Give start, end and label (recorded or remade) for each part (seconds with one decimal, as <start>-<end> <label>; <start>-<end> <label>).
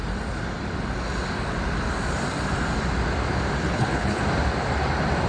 0.0-3.6 recorded; 3.6-4.2 remade; 4.2-5.3 recorded